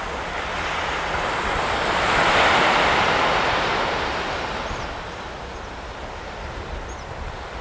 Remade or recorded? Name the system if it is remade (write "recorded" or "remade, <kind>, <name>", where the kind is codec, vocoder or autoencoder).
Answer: recorded